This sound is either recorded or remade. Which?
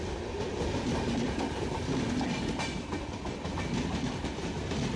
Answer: recorded